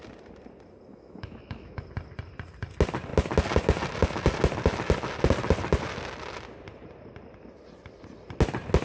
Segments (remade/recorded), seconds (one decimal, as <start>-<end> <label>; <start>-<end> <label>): 0.0-0.9 recorded; 0.9-1.8 remade; 1.8-8.8 recorded